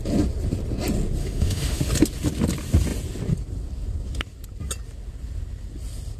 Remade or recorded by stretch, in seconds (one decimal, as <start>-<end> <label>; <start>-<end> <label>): 0.0-1.2 recorded; 1.2-1.8 remade; 1.8-6.2 recorded